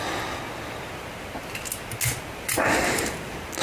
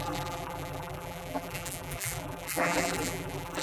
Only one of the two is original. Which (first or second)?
first